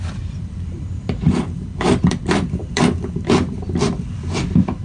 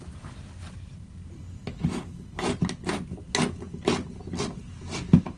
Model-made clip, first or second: first